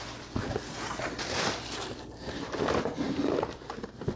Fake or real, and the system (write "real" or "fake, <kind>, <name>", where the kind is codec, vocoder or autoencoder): real